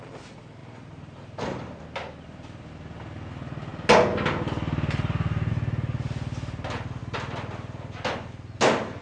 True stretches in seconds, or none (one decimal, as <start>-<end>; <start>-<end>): 0.0-0.6; 1.8-9.0